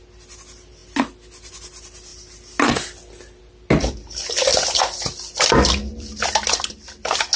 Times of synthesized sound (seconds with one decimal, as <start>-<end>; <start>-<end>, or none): none